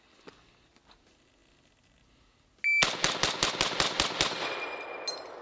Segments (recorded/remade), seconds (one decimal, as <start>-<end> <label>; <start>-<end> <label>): 0.0-5.4 recorded